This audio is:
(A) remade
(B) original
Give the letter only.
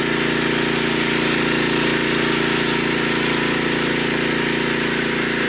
B